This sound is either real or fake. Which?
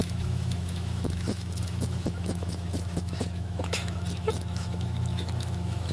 fake